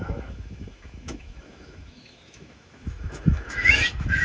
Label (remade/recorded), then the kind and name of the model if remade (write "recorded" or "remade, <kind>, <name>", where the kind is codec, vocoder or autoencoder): remade, autoencoder, DAC-VAE